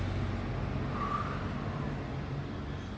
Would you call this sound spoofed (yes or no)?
no